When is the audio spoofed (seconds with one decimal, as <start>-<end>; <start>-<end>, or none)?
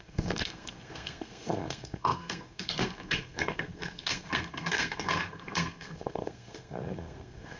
0.0-7.6